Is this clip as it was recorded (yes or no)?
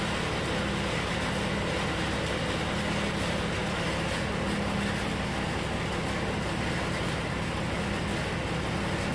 yes